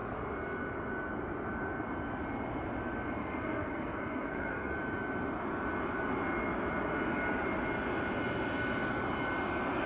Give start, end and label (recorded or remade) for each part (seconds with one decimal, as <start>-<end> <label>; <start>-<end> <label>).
0.0-3.2 recorded; 3.2-4.7 remade; 4.7-9.9 recorded